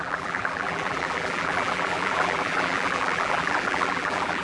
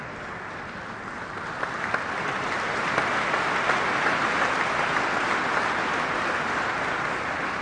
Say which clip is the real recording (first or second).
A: second